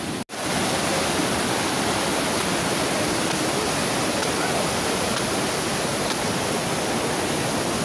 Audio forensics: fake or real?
real